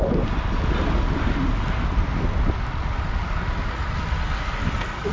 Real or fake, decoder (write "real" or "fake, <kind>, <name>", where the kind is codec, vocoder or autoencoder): real